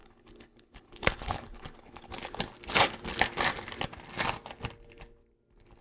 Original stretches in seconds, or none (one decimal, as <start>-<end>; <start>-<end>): 2.1-5.8